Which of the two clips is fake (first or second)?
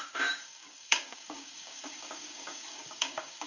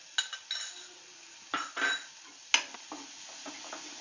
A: first